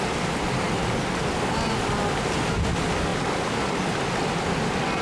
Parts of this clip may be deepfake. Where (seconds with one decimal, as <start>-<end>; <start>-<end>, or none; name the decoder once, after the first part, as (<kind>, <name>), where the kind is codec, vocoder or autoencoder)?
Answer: none